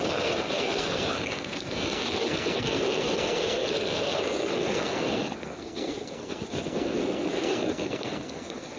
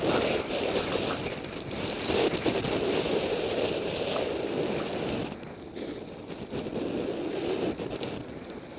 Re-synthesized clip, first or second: first